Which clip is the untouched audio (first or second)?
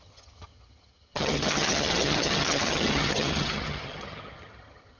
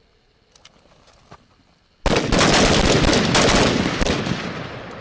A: second